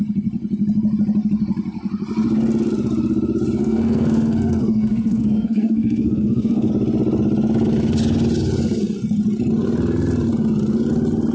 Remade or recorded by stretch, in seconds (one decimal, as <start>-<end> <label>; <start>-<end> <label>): 0.0-3.6 recorded; 3.6-6.7 remade; 6.7-11.3 recorded